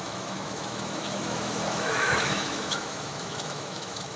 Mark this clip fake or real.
fake